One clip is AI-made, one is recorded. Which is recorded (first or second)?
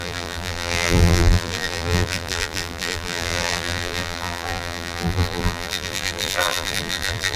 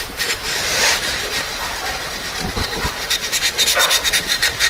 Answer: second